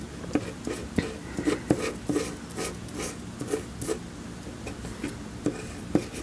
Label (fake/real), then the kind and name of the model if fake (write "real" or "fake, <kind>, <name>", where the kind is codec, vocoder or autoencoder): real